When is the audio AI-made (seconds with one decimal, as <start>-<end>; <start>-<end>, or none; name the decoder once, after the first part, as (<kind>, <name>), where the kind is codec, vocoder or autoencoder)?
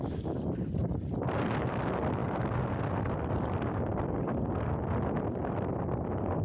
0.8-1.5 (vocoder, BigVGAN v2)